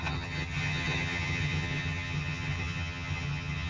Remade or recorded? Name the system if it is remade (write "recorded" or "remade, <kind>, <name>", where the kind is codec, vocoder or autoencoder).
remade, vocoder, HiFi-GAN